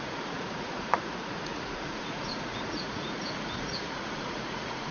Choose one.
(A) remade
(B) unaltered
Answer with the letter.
A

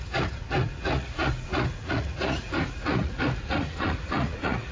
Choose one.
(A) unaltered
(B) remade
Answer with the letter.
B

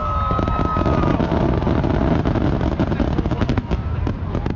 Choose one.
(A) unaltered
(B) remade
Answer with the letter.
A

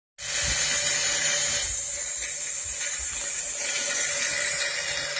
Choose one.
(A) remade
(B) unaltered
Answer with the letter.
B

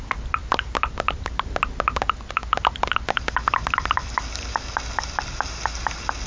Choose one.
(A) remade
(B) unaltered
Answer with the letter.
B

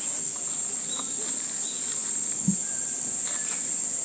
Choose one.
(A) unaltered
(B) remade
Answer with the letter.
A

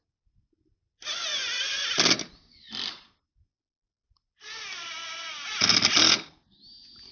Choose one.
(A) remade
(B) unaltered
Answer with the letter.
B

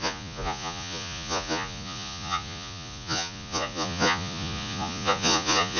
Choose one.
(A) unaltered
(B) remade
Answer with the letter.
B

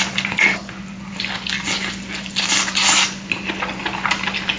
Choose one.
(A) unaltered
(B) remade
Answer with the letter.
A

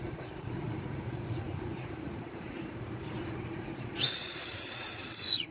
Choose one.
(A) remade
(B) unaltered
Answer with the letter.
A